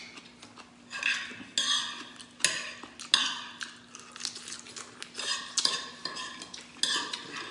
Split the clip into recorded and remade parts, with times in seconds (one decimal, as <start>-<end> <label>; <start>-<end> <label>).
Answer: 0.0-7.5 recorded